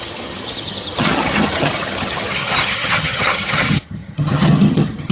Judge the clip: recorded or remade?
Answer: remade